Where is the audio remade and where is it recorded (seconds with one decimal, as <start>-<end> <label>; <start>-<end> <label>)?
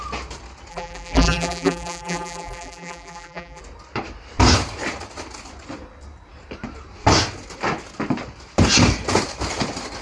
0.0-0.7 recorded; 0.7-3.6 remade; 3.6-10.0 recorded